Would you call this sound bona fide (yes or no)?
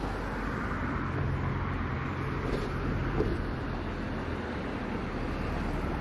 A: yes